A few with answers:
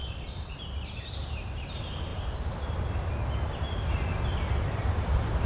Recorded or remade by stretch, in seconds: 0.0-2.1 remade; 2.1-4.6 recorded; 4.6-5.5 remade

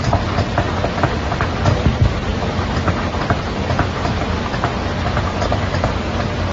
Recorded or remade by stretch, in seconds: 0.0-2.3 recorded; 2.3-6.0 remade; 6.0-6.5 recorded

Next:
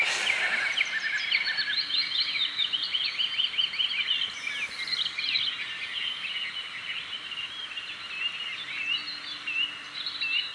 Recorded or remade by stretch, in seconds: 0.0-10.5 recorded

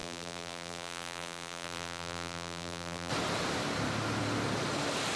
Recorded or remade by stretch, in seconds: 0.0-3.1 remade; 3.1-5.2 recorded